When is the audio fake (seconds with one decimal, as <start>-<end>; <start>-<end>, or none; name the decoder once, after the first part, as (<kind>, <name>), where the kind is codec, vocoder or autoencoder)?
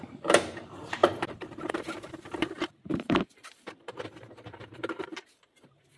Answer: 0.0-6.0 (vocoder, BigVGAN v2)